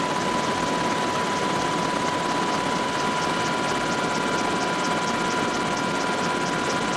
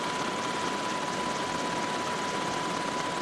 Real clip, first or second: first